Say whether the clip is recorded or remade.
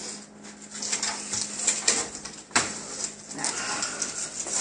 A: recorded